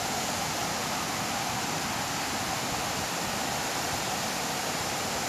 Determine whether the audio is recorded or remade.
recorded